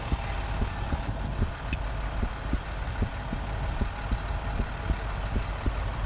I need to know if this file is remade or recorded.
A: recorded